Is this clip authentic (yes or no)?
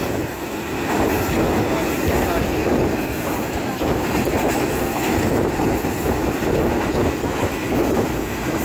yes